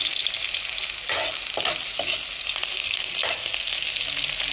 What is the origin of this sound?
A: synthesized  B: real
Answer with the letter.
B